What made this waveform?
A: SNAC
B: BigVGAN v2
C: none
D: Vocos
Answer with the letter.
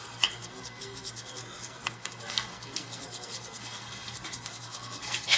A